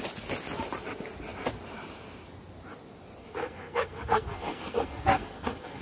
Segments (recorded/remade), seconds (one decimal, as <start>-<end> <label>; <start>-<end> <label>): 0.0-3.2 recorded; 3.2-5.8 remade